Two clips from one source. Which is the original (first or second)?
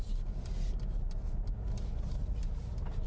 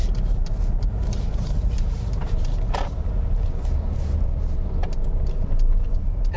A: first